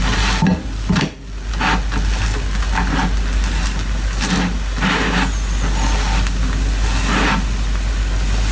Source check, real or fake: real